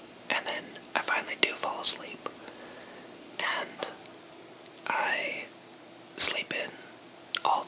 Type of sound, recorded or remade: recorded